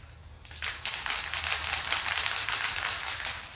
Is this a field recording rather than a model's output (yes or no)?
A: yes